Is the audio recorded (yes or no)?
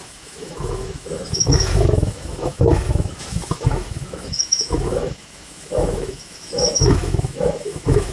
no